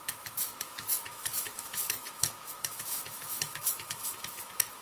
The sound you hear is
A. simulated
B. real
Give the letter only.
A